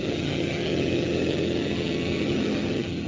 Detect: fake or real fake